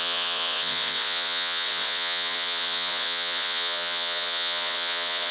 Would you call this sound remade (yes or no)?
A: yes